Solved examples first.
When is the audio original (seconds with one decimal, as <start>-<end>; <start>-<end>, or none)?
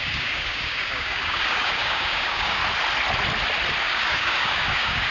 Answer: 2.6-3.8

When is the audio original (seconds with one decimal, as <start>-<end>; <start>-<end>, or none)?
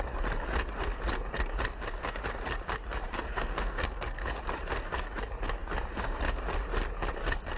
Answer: 0.0-3.3; 4.3-7.6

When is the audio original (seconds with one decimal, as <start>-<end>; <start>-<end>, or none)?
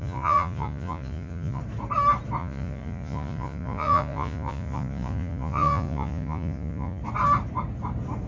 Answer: 1.6-2.4; 7.0-8.3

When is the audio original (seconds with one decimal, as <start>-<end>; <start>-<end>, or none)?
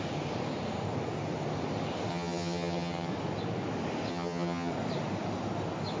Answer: 0.0-2.1; 3.1-4.1; 4.7-6.0